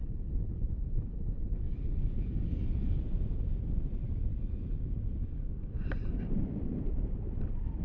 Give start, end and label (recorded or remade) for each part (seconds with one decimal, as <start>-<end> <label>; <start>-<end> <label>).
0.0-3.0 remade; 3.0-7.8 recorded